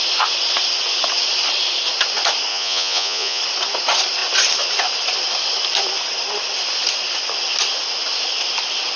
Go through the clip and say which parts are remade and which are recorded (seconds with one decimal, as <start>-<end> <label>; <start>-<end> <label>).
0.0-2.5 recorded; 2.5-3.4 remade; 3.4-9.0 recorded